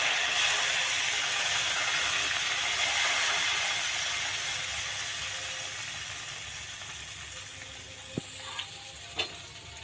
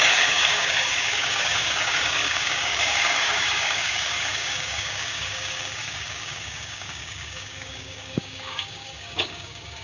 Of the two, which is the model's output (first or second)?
second